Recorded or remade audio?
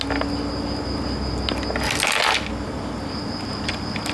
recorded